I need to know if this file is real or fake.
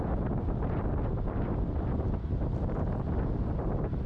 real